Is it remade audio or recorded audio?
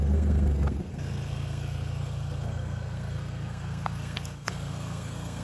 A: remade